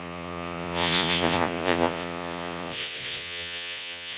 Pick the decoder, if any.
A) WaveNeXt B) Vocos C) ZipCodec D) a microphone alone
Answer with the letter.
B